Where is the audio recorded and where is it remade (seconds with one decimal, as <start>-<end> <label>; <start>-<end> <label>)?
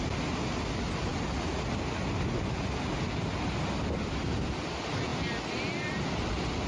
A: 0.0-6.7 recorded